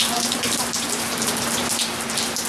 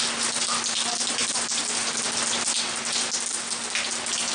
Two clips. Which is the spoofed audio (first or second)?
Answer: first